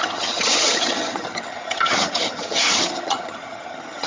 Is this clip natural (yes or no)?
no